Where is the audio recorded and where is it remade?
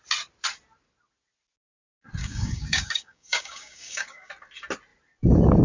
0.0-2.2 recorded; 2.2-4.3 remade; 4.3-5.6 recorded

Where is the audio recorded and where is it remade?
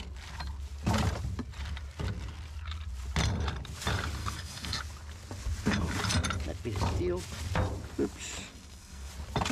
0.0-4.2 recorded; 4.2-4.8 remade; 4.8-8.5 recorded; 8.5-9.1 remade; 9.1-9.5 recorded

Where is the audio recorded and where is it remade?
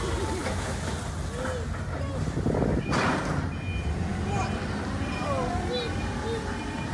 0.0-0.4 recorded; 0.4-0.9 remade; 0.9-6.9 recorded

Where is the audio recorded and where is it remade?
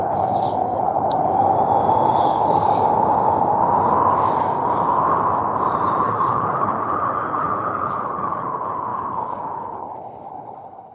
0.0-1.4 remade; 1.4-2.2 recorded; 2.2-2.7 remade; 2.7-6.0 recorded; 6.0-10.9 remade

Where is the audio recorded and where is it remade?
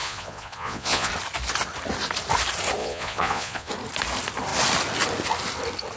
0.0-1.1 remade; 1.1-2.8 recorded; 2.8-3.7 remade; 3.7-6.0 recorded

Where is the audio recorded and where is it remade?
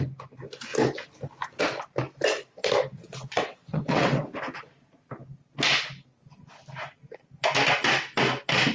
0.0-2.9 recorded; 2.9-4.2 remade; 4.2-8.7 recorded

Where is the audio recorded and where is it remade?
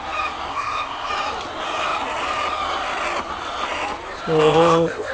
0.0-0.5 recorded; 0.5-1.1 remade; 1.1-4.4 recorded; 4.4-5.1 remade